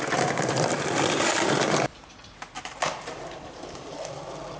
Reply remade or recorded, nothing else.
remade